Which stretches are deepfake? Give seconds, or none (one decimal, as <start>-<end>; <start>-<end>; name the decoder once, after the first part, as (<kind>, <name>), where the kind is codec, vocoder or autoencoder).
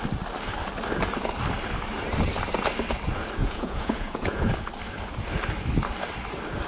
3.4-4.5 (vocoder, Vocos)